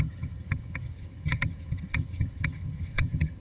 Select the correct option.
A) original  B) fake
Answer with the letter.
B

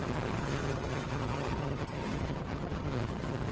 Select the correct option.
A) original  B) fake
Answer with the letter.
B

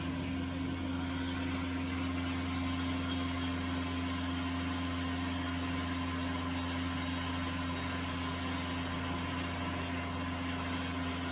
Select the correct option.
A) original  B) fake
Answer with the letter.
A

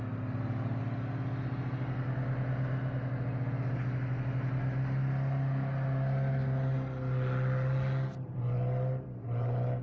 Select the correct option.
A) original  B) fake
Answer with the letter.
A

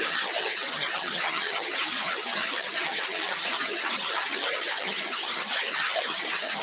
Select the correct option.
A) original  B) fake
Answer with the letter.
B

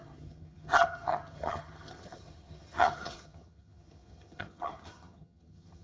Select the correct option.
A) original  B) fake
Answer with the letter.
B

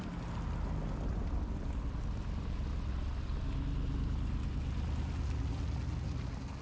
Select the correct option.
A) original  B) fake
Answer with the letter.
A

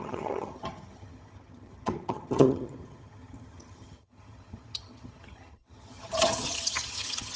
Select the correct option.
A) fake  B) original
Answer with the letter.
A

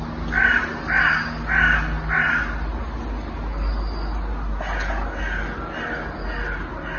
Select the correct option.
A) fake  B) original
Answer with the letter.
B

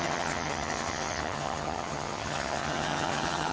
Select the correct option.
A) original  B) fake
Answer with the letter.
B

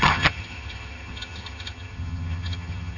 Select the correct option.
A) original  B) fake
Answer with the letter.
B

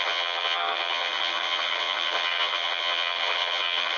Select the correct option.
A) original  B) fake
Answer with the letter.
B